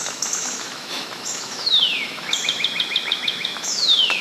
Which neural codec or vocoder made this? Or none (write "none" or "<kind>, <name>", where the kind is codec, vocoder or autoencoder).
autoencoder, DAC-VAE